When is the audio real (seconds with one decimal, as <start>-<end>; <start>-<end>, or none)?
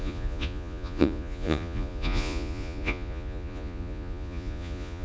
none